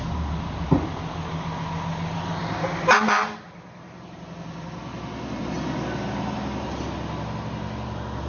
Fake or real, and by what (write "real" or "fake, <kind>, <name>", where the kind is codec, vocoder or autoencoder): real